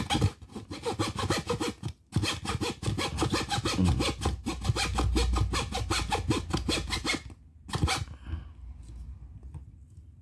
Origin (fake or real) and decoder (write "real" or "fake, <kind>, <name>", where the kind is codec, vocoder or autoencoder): real